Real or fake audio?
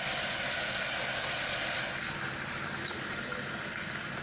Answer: real